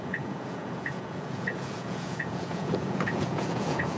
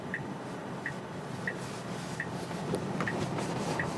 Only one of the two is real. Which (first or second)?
second